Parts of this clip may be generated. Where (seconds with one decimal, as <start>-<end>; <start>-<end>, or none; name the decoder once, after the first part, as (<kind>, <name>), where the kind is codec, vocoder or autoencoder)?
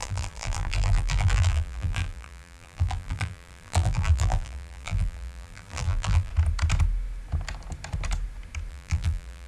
0.0-6.3 (vocoder, BigVGAN v2); 8.7-9.5